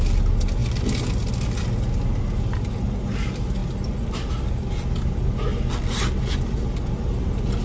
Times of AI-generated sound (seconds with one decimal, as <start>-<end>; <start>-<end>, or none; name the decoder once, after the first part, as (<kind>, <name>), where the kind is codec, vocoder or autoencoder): none